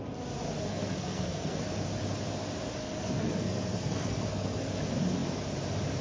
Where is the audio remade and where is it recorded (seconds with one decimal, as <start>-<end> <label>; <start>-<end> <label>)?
0.0-0.7 recorded; 0.7-1.6 remade; 1.6-2.8 recorded; 2.8-4.8 remade; 4.8-6.0 recorded